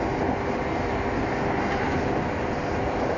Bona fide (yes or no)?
yes